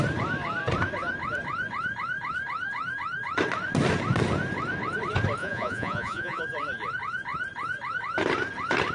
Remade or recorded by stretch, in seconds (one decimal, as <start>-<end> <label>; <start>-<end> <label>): 0.0-5.4 recorded; 5.4-6.4 remade; 6.4-8.9 recorded